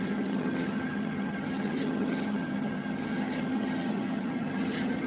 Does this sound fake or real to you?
fake